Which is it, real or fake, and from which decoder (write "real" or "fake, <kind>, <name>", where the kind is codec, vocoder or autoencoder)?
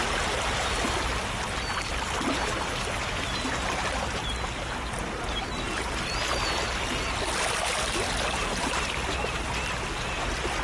real